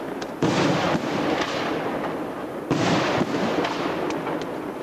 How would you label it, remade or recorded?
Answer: recorded